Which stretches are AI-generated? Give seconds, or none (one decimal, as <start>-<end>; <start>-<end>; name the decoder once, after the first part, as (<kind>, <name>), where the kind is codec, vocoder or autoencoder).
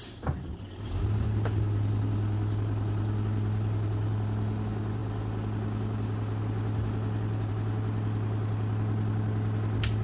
none